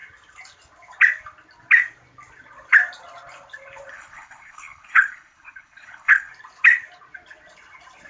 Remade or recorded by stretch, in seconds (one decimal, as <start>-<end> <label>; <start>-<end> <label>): 0.0-3.9 recorded; 3.9-6.3 remade; 6.3-8.1 recorded